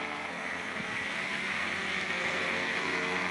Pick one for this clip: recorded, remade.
remade